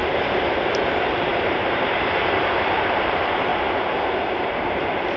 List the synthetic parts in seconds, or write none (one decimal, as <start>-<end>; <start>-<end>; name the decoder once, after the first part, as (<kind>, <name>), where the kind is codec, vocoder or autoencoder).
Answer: 0.7-3.5 (vocoder, BigVGAN v2); 4.3-5.2